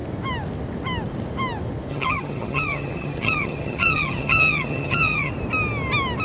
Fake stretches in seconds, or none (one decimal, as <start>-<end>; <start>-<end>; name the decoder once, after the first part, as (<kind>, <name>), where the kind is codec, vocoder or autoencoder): 1.9-5.3 (vocoder, HiFi-GAN)